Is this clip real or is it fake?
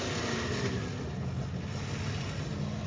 real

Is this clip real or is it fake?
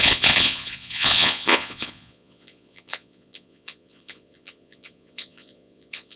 fake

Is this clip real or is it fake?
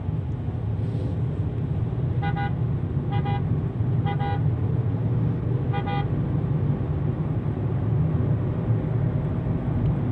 real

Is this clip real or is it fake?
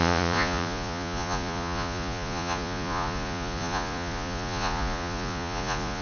fake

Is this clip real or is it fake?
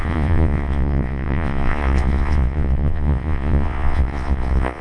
fake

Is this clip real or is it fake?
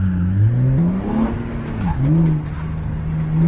real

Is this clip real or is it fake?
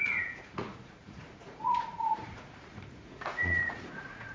fake